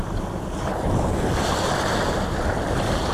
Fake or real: real